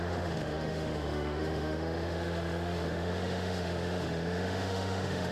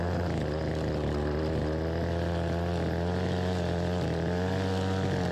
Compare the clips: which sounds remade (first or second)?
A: first